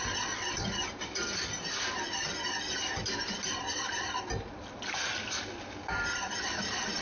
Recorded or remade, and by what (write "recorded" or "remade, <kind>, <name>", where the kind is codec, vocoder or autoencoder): remade, vocoder, BigVGAN v2